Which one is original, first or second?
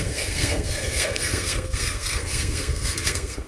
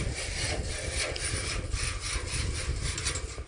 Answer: second